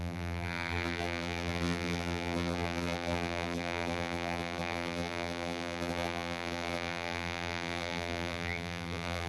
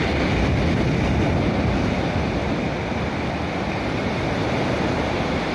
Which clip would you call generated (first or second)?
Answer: first